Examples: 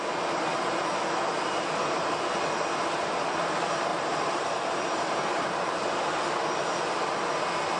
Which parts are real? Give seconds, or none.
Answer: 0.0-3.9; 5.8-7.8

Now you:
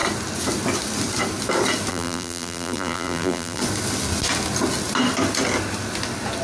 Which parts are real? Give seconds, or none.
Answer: 0.0-1.9; 3.6-6.4

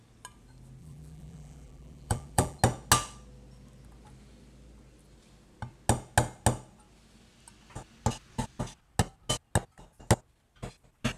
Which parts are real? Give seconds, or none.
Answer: 0.0-0.8; 2.6-11.2

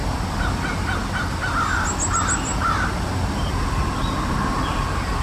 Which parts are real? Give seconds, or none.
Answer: 0.0-5.2

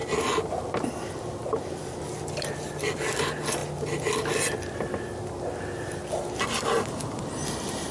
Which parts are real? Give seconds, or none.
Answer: 0.0-7.9